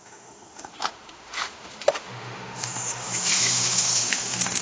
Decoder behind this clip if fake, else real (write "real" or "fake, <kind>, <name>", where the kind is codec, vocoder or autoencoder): fake, autoencoder, DAC-VAE